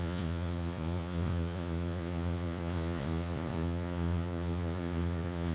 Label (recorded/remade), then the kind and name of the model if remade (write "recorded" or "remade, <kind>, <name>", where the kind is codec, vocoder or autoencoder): remade, vocoder, Vocos